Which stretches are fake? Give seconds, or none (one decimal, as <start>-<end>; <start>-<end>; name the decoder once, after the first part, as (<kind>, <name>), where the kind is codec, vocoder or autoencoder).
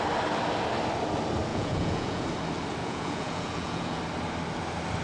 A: 1.5-2.2 (vocoder, Vocos); 2.8-4.0